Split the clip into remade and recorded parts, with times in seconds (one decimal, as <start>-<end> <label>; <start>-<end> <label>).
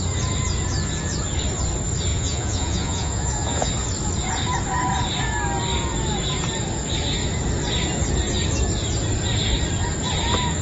0.0-2.1 recorded; 2.1-3.7 remade; 3.7-10.6 recorded